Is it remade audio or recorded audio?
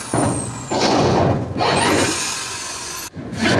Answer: remade